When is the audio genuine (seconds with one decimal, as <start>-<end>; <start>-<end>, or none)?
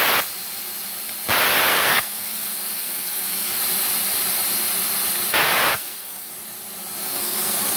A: 0.0-1.7; 3.6-5.7; 6.3-7.0